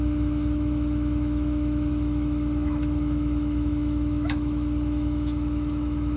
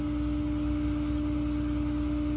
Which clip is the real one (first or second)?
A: second